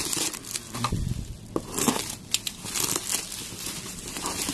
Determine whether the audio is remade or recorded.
recorded